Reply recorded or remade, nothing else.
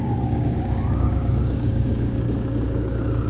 remade